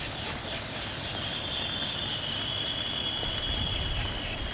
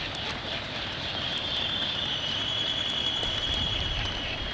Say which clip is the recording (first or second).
first